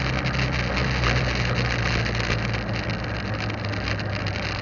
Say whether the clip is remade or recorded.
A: recorded